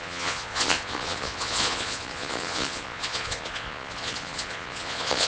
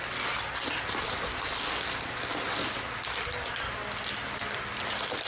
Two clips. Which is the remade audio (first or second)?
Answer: first